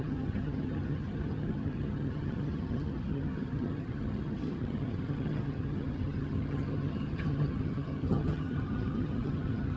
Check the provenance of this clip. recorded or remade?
remade